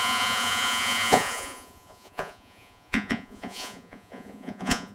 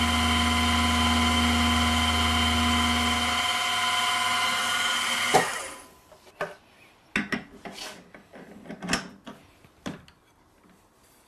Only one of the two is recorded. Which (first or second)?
second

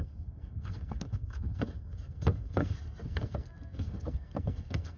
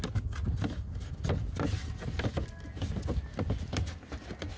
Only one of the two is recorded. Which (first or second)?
second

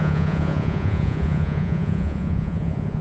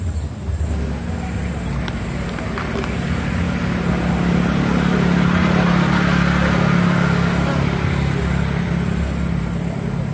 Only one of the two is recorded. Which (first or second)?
second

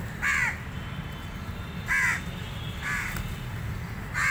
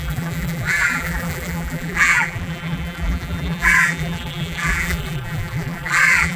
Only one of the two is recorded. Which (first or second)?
first